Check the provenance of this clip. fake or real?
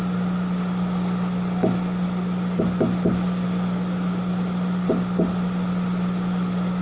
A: real